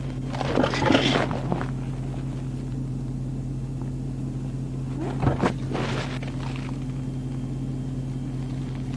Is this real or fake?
real